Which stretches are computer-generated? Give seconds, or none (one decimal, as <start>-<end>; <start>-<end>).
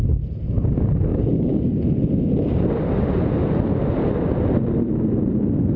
1.1-1.8